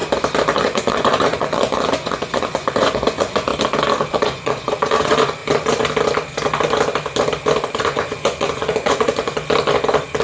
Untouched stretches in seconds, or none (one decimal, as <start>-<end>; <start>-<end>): 0.0-0.6; 3.5-4.1; 5.4-7.7; 9.3-10.2